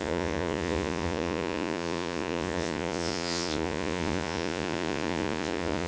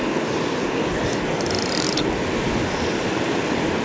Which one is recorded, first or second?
second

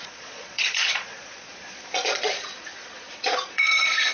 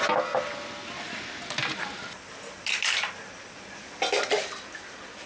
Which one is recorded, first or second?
second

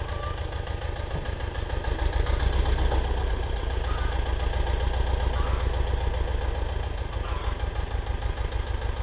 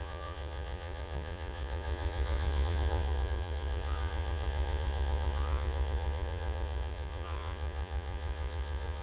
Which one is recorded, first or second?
first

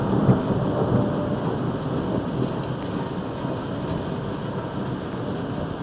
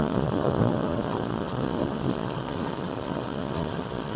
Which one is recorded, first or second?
first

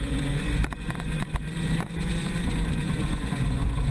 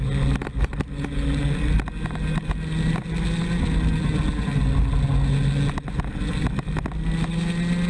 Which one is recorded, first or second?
second